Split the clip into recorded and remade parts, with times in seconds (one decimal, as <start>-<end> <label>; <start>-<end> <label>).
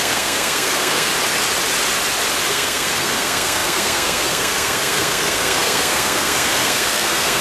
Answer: 0.0-1.1 remade; 1.1-2.5 recorded; 2.5-7.4 remade